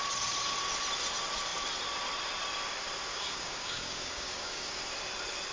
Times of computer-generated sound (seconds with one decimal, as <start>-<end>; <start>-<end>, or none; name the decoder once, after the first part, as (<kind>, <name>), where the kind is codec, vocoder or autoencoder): 3.1-4.8 (codec, DAC)